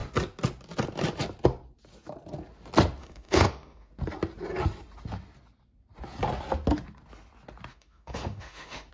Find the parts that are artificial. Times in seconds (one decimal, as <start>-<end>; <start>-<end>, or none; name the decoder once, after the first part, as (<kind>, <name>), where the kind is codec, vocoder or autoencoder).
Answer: 3.0-3.9 (autoencoder, DAC-VAE); 7.7-8.9